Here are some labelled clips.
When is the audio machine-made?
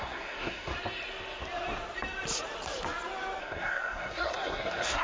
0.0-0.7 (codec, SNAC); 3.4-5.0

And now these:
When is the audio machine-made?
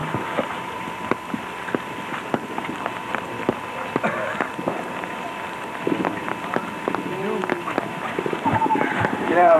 2.2-6.2 (vocoder, BigVGAN v2); 7.8-9.6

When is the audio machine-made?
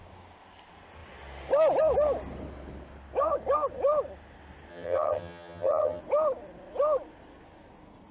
4.7-6.0 (vocoder, HiFi-GAN)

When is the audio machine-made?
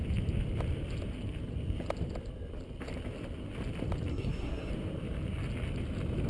4.1-4.7 (codec, SNAC)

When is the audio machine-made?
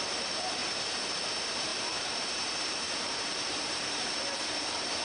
0.0-0.6 (vocoder, BigVGAN v2); 1.1-5.0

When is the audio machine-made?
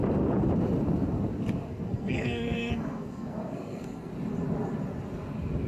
1.7-4.1 (codec, SNAC)